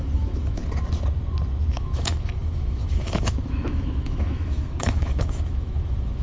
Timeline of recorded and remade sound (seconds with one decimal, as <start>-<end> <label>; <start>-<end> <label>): 0.0-0.6 remade; 0.6-1.7 recorded; 1.7-6.2 remade